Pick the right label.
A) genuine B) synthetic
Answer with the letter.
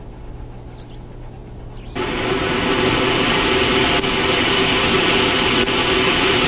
A